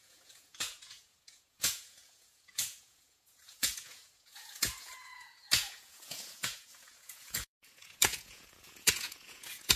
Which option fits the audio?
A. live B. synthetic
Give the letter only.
B